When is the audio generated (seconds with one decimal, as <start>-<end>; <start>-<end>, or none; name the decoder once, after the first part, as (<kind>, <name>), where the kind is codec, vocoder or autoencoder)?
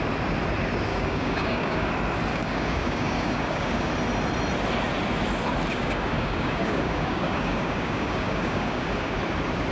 0.9-1.9 (codec, DAC); 2.3-3.9; 5.7-9.2